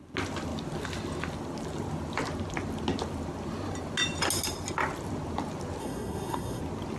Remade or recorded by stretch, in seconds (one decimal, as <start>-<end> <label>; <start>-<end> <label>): 0.0-5.8 recorded; 5.8-6.6 remade; 6.6-7.0 recorded